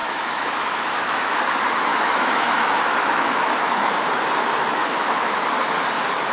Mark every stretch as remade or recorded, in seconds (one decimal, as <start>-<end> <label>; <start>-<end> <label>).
0.0-1.4 remade; 1.4-1.9 recorded; 1.9-4.0 remade; 4.0-4.8 recorded; 4.8-5.4 remade; 5.4-6.3 recorded